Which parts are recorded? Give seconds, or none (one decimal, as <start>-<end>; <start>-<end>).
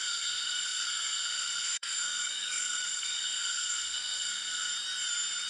4.7-5.5